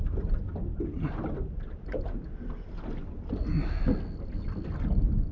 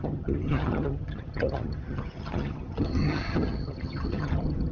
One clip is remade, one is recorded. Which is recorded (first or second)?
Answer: first